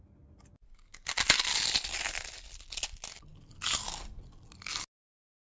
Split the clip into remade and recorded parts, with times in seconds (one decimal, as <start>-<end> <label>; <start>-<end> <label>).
0.0-5.5 recorded